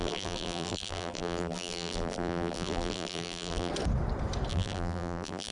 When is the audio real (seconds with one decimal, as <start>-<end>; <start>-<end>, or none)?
3.7-4.5